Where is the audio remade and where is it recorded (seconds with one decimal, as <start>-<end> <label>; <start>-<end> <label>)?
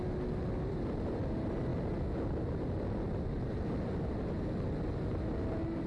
0.0-5.9 recorded